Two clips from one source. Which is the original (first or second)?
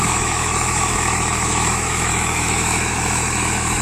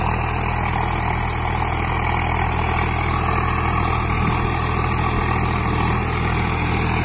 second